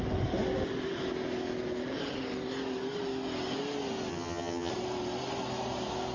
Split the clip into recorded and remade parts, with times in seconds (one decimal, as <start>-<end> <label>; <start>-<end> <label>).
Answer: 0.0-4.1 recorded; 4.1-4.7 remade; 4.7-6.1 recorded